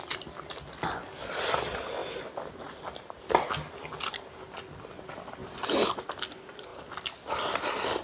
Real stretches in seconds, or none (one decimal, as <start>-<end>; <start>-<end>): 0.0-8.0